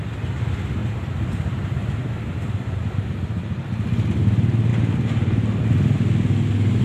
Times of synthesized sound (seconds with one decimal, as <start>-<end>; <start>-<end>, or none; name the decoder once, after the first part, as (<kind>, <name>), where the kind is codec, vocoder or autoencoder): 0.8-3.1 (vocoder, BigVGAN v2)